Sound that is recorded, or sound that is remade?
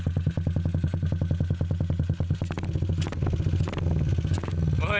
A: recorded